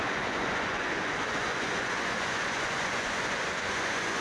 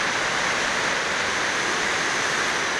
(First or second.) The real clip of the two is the second